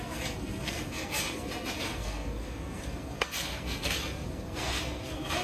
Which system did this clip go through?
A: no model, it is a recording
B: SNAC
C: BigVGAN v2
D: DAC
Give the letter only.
B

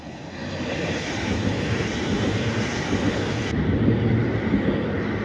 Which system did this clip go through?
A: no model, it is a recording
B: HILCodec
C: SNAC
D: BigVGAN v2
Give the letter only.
A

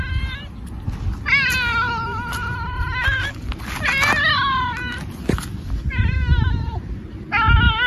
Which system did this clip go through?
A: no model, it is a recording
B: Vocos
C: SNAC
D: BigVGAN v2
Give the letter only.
A